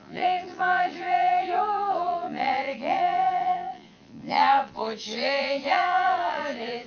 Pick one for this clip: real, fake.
fake